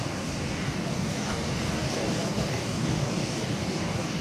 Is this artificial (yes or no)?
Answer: yes